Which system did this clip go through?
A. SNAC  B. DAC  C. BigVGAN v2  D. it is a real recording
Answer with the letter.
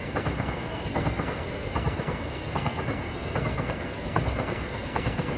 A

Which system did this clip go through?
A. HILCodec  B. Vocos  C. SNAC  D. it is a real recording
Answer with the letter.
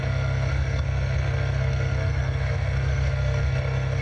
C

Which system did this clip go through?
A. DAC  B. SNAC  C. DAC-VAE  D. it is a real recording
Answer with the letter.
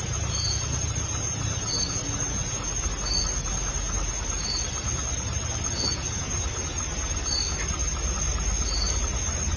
D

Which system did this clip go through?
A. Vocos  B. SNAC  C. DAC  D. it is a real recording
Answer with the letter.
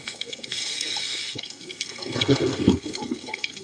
B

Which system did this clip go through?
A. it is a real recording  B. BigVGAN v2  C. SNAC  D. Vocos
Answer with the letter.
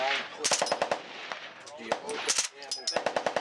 A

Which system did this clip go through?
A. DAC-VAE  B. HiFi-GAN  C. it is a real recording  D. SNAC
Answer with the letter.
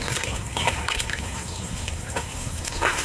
D